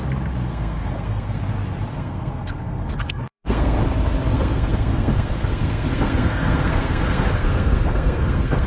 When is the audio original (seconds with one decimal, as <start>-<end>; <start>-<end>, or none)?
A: 0.0-0.5; 1.4-1.9; 3.8-4.3